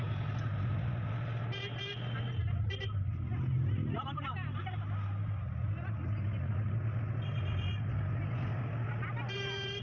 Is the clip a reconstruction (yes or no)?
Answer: no